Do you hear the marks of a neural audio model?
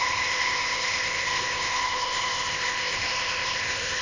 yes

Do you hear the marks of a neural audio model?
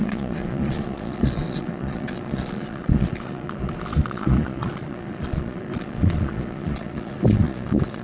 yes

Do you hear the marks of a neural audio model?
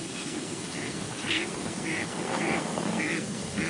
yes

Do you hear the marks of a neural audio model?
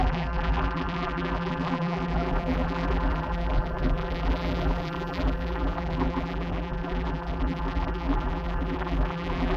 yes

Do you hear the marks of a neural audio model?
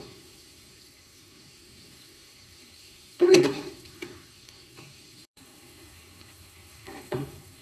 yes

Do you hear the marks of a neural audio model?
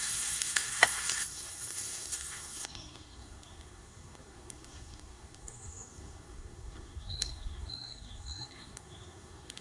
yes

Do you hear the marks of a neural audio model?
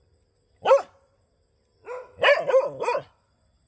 no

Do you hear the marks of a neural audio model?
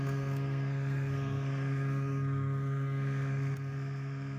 yes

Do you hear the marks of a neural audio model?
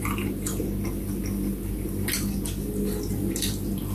no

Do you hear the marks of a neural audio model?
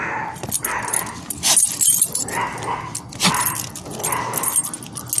no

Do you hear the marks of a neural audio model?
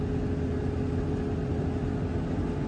no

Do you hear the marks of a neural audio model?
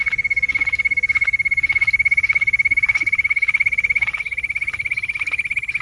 no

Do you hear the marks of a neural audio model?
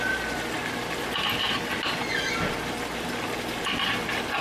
no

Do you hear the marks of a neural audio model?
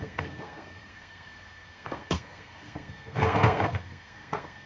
yes